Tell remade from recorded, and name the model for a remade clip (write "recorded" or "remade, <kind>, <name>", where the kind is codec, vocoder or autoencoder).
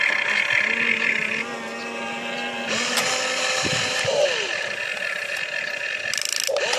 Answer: recorded